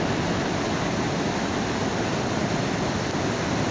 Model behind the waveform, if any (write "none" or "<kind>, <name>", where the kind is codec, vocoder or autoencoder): none